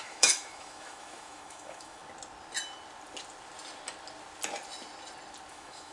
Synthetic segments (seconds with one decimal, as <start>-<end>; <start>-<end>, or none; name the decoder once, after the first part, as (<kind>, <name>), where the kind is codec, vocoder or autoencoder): 0.0-2.0 (autoencoder, DAC-VAE); 5.5-5.9